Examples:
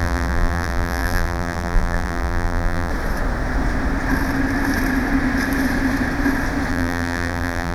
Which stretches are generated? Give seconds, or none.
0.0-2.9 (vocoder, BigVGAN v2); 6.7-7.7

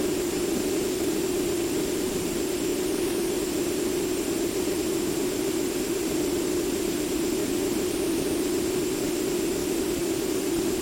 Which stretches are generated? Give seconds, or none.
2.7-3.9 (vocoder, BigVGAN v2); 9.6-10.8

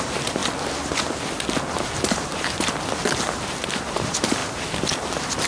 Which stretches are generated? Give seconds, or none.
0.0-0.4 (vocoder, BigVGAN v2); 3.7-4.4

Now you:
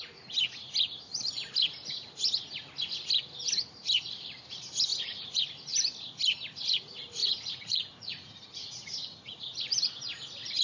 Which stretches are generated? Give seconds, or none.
4.9-5.4 (vocoder, Vocos); 7.2-9.4

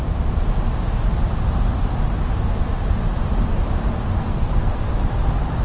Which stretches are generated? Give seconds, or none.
4.2-4.9 (codec, SNAC)